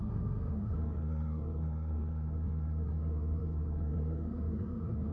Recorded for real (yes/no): no